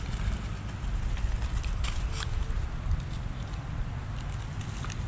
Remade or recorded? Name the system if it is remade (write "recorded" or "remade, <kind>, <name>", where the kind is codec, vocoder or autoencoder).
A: recorded